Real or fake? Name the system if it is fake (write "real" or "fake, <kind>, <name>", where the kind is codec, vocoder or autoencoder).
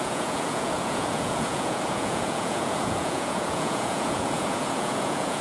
fake, vocoder, Vocos